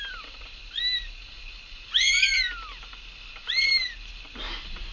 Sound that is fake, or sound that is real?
real